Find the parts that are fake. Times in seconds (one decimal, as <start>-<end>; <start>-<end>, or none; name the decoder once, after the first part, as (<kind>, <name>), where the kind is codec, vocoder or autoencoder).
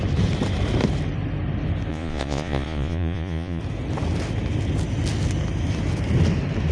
1.9-3.6 (vocoder, Vocos)